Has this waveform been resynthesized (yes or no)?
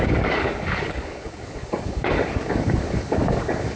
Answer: yes